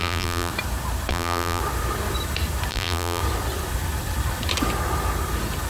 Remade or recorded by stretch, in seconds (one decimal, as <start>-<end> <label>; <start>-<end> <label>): 0.0-0.5 remade; 0.5-1.1 recorded; 1.1-1.6 remade; 1.6-2.7 recorded; 2.7-3.2 remade; 3.2-5.7 recorded